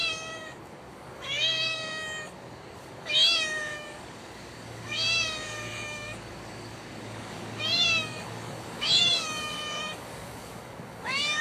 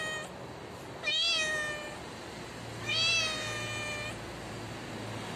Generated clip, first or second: first